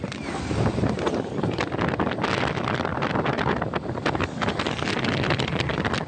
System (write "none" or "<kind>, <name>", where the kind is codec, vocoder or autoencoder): none